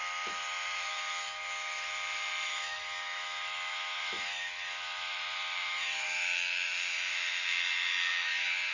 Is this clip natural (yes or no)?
no